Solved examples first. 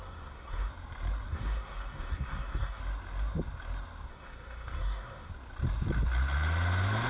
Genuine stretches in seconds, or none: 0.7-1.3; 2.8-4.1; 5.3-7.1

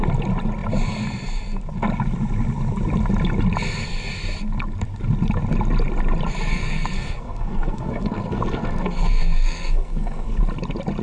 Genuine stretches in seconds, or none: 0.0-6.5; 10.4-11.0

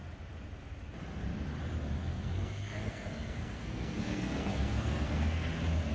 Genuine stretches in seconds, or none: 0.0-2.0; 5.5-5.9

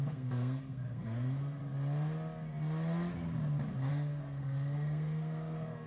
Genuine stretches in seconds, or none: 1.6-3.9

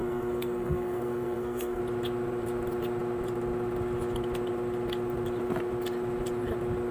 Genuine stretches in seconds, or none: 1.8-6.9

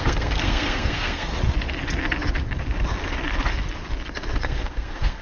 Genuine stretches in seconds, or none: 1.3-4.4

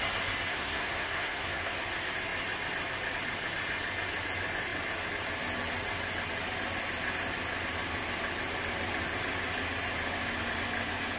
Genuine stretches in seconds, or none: 0.0-0.5; 1.7-11.2